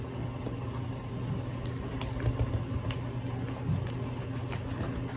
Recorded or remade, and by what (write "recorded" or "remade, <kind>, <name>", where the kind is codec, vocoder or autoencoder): recorded